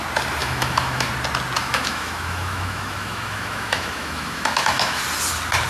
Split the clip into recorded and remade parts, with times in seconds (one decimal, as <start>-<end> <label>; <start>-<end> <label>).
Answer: 0.0-0.4 recorded; 0.4-1.1 remade; 1.1-1.6 recorded; 1.6-5.0 remade; 5.0-5.7 recorded